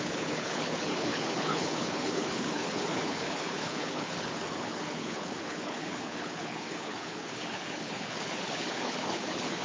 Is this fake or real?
fake